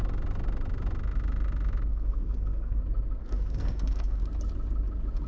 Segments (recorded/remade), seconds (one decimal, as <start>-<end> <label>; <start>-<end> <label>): 0.0-1.9 recorded; 1.9-2.8 remade; 2.8-3.2 recorded; 3.2-4.2 remade; 4.2-5.3 recorded